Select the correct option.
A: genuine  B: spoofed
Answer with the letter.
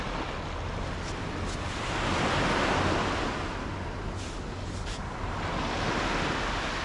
A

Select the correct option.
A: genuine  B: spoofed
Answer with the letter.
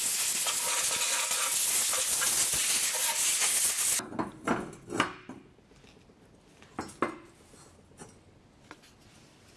A